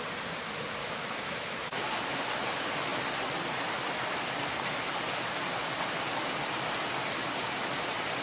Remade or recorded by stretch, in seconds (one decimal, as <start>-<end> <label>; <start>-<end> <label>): 0.0-0.8 recorded; 0.8-1.8 remade; 1.8-8.2 recorded